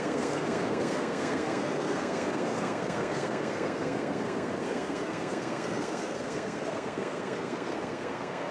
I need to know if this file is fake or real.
fake